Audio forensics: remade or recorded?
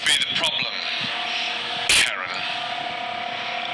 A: recorded